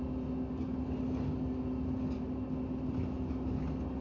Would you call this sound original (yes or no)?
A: yes